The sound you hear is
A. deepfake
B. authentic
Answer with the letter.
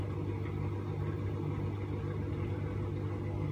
B